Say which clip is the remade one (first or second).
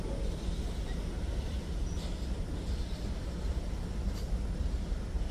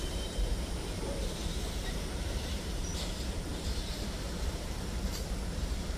second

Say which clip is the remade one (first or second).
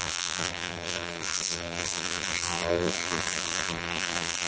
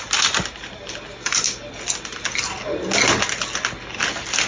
first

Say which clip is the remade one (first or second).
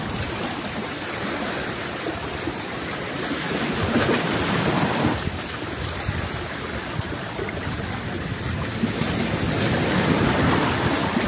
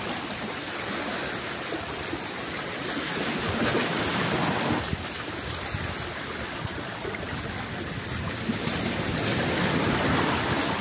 first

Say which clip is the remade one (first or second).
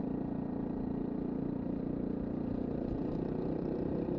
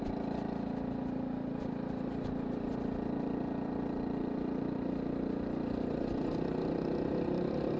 first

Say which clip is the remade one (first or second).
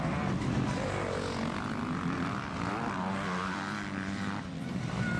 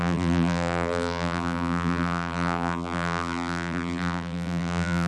second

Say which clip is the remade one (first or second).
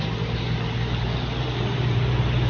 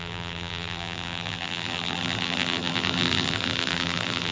second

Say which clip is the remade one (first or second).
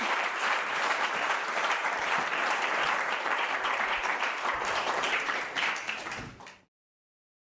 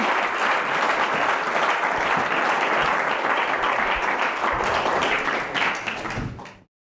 first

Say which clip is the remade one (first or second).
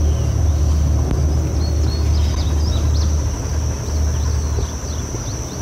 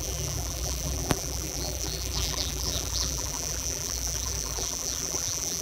second